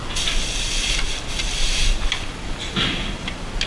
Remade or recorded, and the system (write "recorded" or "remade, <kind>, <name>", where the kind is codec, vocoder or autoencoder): recorded